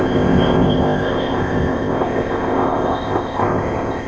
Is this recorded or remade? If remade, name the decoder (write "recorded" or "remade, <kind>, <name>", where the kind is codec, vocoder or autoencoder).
remade, codec, ZipCodec